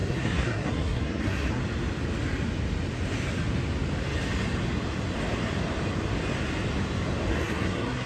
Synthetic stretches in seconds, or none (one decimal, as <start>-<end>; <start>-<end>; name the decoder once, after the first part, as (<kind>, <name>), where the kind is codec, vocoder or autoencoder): 0.0-1.6 (codec, SNAC); 7.3-8.1